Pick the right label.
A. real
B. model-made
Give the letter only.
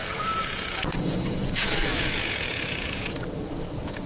B